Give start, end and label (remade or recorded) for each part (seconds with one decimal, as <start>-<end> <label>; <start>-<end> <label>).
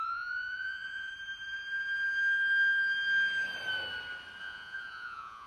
0.0-1.1 remade; 1.1-4.4 recorded; 4.4-5.5 remade